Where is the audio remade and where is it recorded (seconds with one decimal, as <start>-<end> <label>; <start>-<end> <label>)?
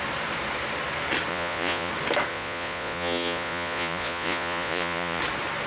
0.0-1.3 recorded; 1.3-1.9 remade; 1.9-2.3 recorded; 2.3-5.2 remade; 5.2-5.7 recorded